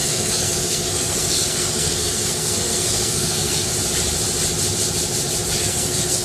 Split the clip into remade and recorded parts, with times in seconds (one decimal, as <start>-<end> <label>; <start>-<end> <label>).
0.0-3.7 remade; 3.7-5.6 recorded; 5.6-6.2 remade